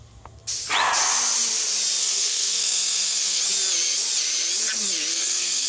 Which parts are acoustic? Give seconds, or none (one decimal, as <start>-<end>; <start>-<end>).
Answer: 0.0-2.0; 3.4-5.1